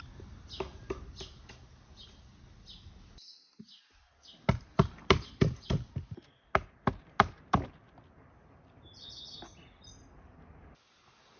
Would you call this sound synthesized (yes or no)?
no